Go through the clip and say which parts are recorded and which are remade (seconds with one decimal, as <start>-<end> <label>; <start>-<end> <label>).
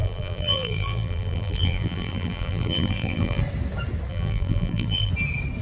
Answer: 0.0-3.4 remade; 3.4-4.1 recorded; 4.1-5.1 remade; 5.1-5.6 recorded